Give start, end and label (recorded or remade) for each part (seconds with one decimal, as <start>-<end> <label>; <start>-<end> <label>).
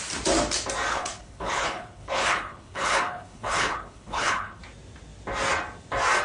0.0-0.9 recorded; 0.9-4.6 remade; 4.6-6.2 recorded